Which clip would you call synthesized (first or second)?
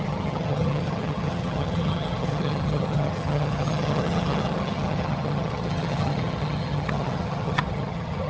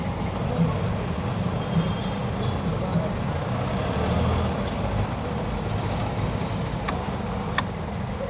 first